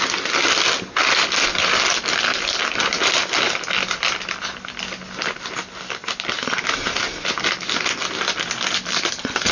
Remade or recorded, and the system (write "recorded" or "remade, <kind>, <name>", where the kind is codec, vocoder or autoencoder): recorded